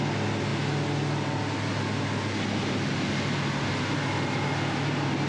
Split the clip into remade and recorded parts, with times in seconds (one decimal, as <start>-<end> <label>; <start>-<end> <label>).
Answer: 0.0-5.3 recorded